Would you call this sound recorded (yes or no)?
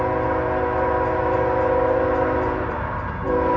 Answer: yes